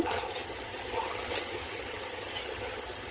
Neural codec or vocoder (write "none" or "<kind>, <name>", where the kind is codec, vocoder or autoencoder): vocoder, HiFi-GAN